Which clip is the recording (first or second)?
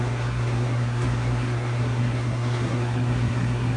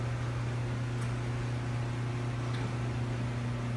second